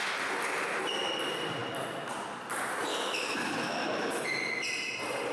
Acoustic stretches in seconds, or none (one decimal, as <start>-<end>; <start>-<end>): 0.0-2.9; 4.2-5.3